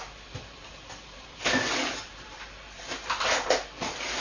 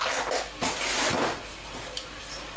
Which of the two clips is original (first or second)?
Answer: second